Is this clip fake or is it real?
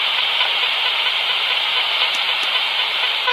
fake